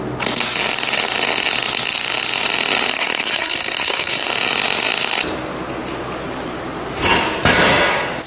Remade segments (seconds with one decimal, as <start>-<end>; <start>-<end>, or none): 2.9-4.3